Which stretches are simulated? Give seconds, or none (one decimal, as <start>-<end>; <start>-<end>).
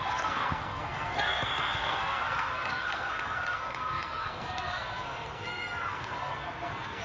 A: 0.0-7.0